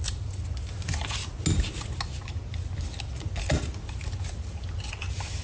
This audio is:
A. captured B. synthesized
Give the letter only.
A